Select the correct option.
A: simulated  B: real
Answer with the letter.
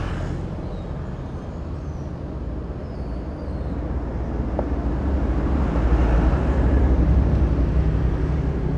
B